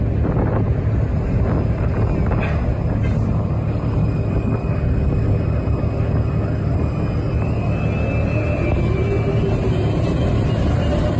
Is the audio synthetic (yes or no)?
no